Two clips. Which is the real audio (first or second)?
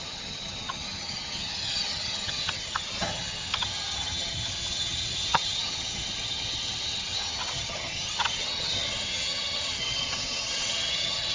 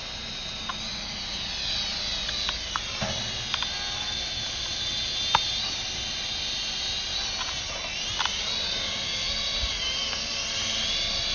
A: second